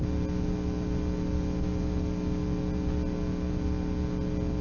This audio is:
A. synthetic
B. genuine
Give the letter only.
B